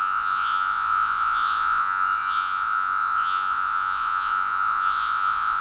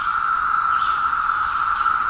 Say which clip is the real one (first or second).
second